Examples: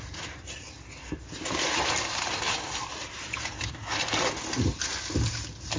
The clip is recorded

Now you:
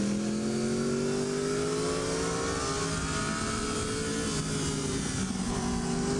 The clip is recorded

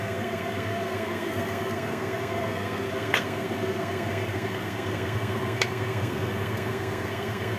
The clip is remade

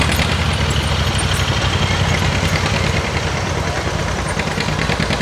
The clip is remade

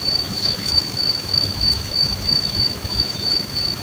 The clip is remade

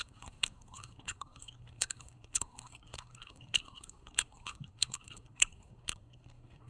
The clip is remade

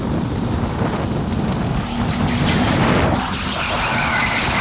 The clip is recorded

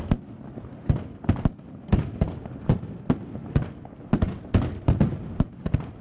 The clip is recorded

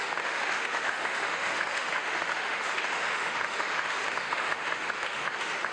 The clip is remade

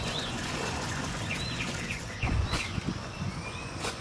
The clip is remade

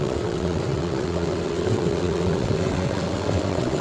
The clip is remade